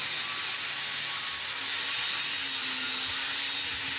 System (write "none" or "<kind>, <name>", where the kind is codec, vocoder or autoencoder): none